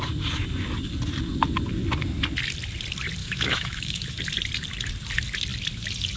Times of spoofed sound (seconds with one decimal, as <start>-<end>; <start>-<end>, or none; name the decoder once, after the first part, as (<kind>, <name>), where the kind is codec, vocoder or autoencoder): 3.2-4.2 (autoencoder, DAC-VAE)